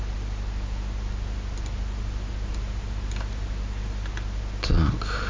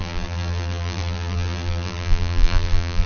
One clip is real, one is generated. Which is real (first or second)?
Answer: first